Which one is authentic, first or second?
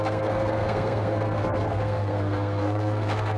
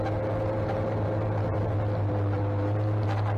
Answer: second